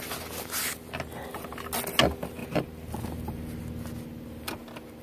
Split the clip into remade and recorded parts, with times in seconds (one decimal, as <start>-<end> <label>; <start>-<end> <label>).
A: 0.0-5.0 recorded